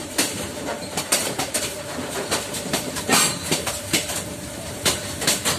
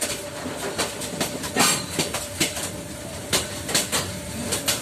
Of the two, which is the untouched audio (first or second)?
second